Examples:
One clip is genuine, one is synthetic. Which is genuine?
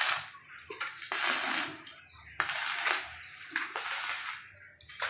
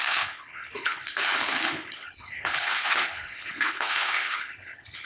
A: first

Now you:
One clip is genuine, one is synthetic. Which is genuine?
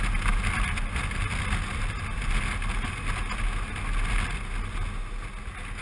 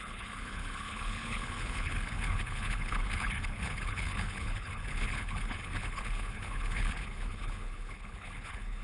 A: first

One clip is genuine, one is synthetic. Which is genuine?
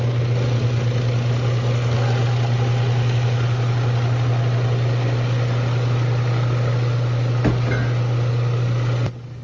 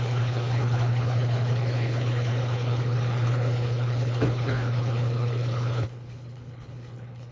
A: first